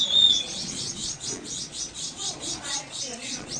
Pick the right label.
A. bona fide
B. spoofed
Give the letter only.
B